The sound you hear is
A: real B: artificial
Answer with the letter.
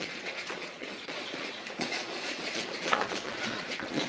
B